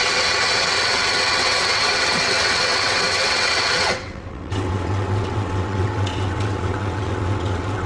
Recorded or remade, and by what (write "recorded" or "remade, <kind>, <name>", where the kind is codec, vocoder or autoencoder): remade, vocoder, WaveNeXt